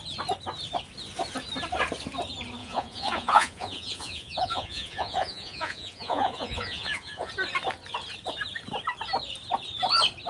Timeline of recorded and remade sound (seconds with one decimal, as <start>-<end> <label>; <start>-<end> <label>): 0.0-2.6 recorded; 2.6-7.3 remade; 7.3-10.3 recorded